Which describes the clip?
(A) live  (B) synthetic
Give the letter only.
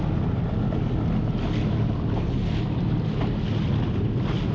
A